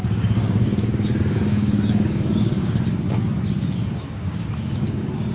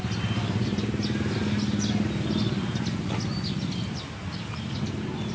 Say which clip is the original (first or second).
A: second